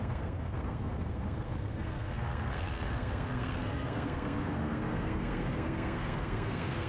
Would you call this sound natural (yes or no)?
no